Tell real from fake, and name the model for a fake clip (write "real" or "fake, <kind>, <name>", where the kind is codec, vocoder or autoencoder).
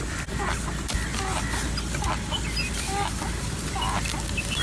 real